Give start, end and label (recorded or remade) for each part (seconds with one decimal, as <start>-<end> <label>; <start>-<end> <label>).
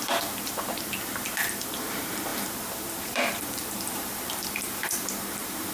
0.0-5.7 remade